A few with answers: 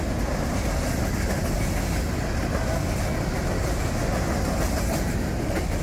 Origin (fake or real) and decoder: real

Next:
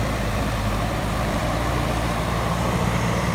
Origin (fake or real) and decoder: fake, vocoder, BigVGAN v2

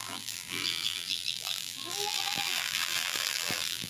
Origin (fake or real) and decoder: fake, vocoder, BigVGAN v2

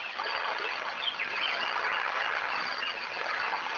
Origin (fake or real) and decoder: fake, vocoder, HiFi-GAN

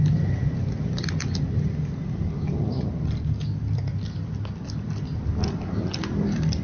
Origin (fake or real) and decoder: real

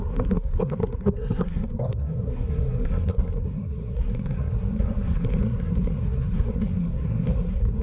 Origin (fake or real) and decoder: fake, codec, SNAC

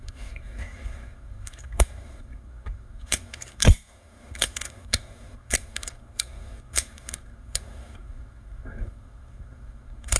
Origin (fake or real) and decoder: fake, codec, SNAC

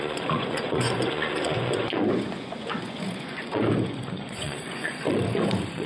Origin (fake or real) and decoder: fake, vocoder, Vocos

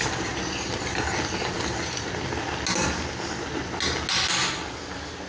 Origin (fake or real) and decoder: real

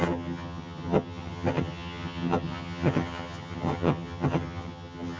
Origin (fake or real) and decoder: fake, vocoder, HiFi-GAN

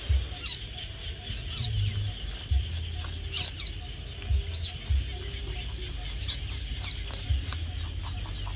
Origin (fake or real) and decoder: real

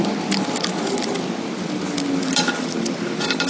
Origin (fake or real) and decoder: real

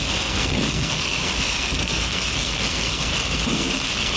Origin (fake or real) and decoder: fake, codec, SNAC